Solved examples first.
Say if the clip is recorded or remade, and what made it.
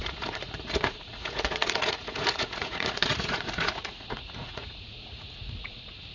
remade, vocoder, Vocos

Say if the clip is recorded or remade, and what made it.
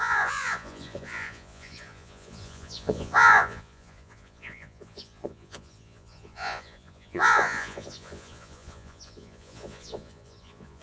remade, vocoder, Vocos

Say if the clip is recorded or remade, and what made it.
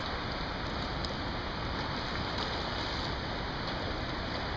recorded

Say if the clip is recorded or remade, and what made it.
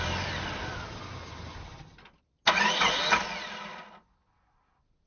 recorded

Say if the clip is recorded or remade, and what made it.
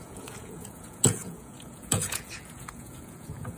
remade, vocoder, Vocos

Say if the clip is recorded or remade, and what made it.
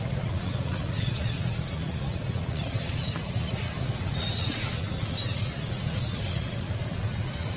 remade, vocoder, Vocos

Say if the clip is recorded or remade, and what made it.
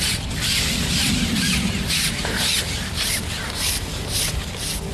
recorded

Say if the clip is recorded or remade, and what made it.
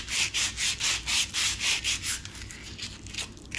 recorded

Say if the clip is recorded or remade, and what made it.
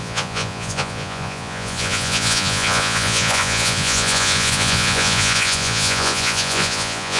remade, vocoder, Vocos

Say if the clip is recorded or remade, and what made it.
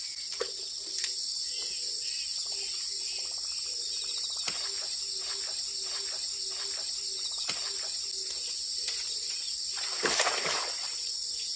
recorded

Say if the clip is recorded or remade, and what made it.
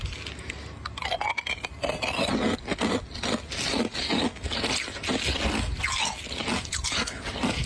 recorded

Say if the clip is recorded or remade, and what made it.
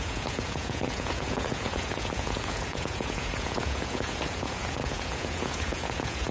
remade, vocoder, Vocos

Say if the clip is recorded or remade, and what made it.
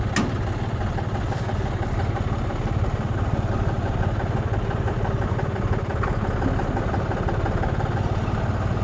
recorded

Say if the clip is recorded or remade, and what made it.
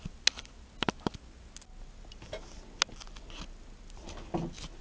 recorded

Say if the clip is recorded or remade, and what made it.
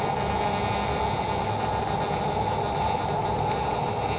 recorded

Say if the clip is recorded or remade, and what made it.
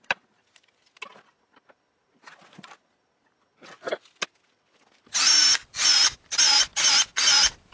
recorded